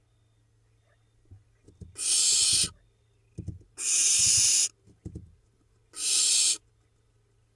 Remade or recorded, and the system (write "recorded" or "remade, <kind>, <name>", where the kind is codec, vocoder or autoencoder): recorded